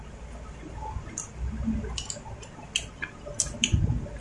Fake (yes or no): no